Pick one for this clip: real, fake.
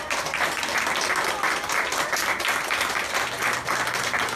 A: real